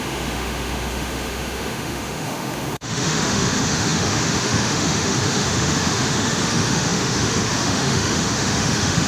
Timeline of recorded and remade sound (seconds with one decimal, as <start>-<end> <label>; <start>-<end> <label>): 0.0-9.1 remade